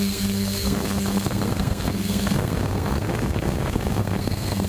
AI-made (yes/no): yes